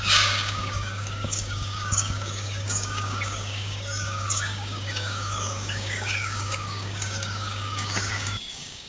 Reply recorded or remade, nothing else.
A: remade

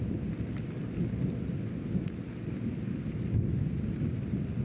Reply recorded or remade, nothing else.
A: recorded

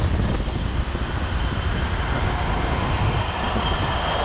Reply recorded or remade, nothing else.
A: recorded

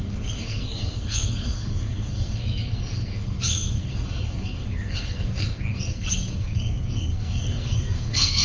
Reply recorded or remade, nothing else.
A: remade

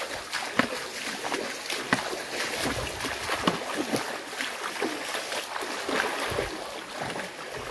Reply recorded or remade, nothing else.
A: recorded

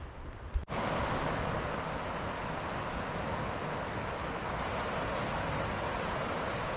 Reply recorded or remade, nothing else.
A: recorded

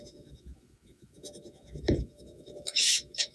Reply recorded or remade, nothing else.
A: remade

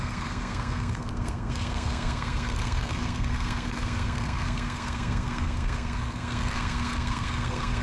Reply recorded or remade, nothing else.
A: remade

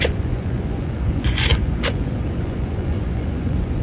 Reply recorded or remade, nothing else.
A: remade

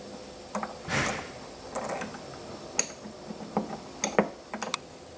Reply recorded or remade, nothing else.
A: recorded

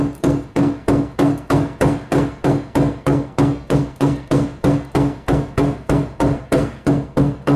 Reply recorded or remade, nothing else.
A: remade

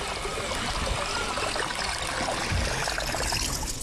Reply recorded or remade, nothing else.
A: recorded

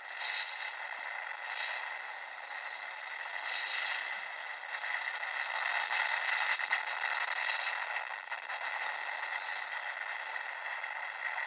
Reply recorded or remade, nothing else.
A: recorded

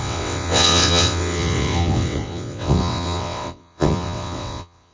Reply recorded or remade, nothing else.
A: remade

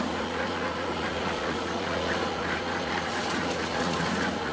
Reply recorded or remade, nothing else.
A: remade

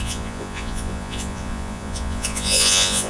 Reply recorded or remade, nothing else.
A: remade